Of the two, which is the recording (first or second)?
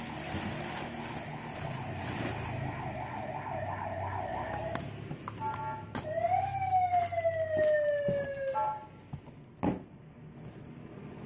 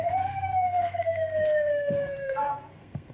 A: first